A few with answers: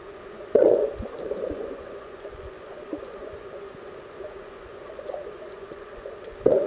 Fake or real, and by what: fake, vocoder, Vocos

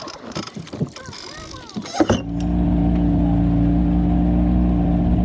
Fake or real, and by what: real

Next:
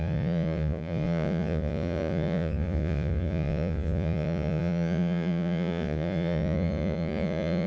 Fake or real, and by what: fake, vocoder, Vocos